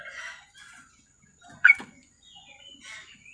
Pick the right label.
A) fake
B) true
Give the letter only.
A